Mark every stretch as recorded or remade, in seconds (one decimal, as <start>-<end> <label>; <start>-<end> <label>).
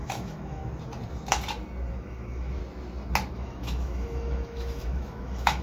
0.0-0.6 remade; 0.6-1.9 recorded; 1.9-2.6 remade; 2.6-3.3 recorded; 3.3-5.6 remade